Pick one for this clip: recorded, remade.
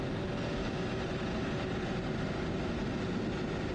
recorded